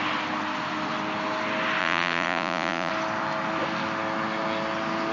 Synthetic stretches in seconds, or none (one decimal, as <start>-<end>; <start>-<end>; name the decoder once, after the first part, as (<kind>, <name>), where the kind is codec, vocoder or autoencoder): 1.8-2.9 (vocoder, Vocos)